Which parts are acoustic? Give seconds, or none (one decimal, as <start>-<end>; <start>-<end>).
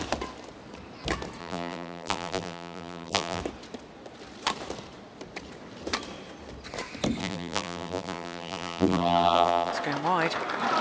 0.0-1.4; 3.4-7.2; 9.7-10.8